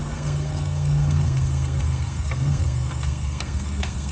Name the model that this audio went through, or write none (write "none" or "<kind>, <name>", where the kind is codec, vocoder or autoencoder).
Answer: codec, SNAC